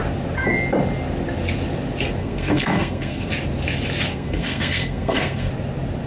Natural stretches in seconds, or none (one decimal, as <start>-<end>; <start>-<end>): 0.0-2.2; 3.3-4.1; 5.5-6.1